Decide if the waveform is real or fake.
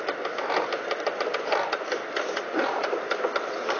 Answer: real